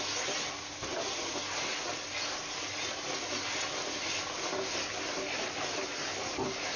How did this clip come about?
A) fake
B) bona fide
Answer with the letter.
B